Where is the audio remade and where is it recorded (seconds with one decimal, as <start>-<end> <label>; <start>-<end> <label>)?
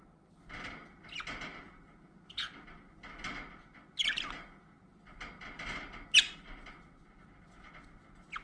0.0-8.4 recorded